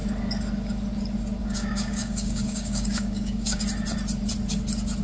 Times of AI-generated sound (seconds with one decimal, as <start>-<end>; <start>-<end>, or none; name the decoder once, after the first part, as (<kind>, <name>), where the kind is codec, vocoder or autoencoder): 1.4-3.6 (codec, DAC)